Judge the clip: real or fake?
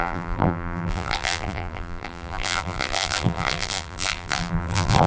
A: fake